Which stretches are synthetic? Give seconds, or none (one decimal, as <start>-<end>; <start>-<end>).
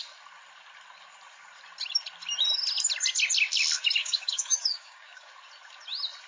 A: 4.0-5.3